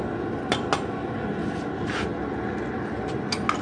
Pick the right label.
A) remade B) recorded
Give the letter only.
B